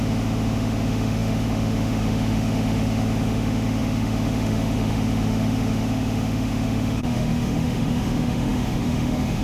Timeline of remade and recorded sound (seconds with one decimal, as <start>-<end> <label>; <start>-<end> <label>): 0.0-9.4 remade